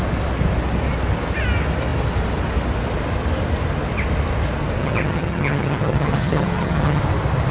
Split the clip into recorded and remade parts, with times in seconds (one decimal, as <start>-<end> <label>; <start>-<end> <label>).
0.0-4.8 recorded; 4.8-7.0 remade; 7.0-7.5 recorded

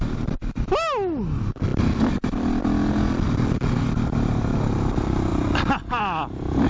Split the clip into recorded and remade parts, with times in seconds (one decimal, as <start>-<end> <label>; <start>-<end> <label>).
0.0-6.7 recorded

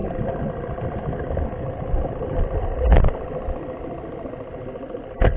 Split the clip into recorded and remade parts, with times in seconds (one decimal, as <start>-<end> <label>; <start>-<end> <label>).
0.0-5.4 recorded

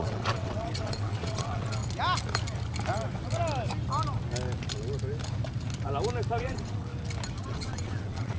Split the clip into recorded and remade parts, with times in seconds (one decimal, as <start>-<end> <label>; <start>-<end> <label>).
0.0-1.8 remade; 1.8-6.4 recorded; 6.4-6.9 remade; 6.9-7.4 recorded; 7.4-8.4 remade

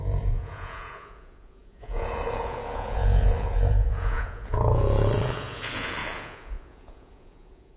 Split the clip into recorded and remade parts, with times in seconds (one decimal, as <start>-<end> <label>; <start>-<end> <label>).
0.0-7.8 remade

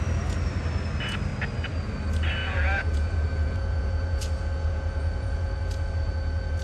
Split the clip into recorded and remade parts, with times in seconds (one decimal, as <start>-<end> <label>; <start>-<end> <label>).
0.0-2.4 recorded; 2.4-6.6 remade

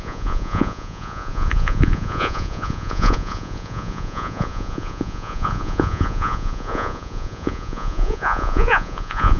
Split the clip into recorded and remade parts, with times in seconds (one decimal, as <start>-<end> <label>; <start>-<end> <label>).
0.0-9.4 remade

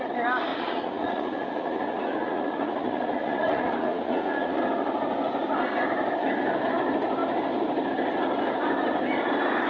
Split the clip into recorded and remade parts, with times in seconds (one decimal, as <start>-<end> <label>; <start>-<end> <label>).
0.0-0.5 recorded; 0.5-4.6 remade; 4.6-9.7 recorded